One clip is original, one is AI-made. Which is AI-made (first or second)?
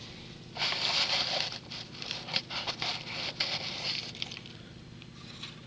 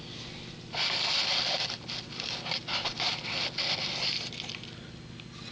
first